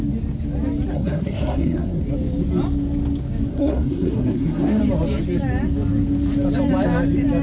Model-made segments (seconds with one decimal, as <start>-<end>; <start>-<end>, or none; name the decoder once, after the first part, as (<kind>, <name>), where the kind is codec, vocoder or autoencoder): 0.9-2.0 (codec, SNAC); 3.5-4.8